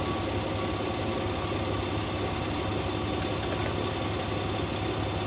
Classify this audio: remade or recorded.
recorded